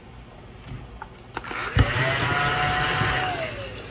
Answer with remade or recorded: recorded